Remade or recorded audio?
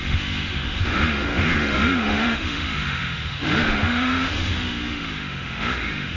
remade